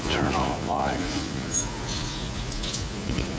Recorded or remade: remade